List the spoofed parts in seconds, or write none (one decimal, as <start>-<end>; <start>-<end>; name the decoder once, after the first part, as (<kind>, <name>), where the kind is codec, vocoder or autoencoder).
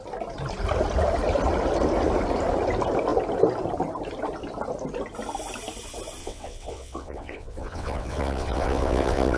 6.2-9.4 (vocoder, WaveNeXt)